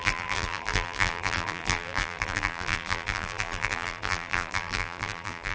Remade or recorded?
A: remade